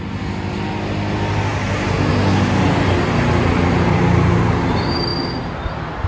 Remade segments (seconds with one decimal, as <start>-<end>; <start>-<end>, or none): none